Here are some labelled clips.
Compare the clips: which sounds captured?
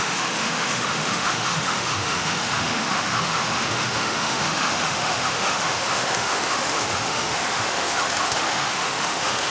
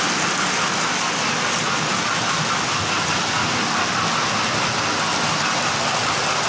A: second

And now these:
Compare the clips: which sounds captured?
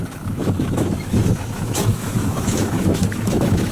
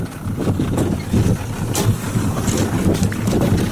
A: second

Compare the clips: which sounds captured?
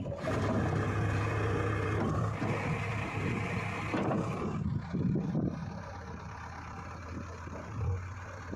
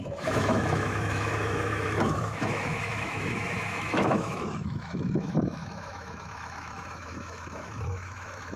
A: first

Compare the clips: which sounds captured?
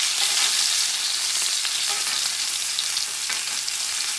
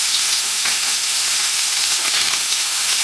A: first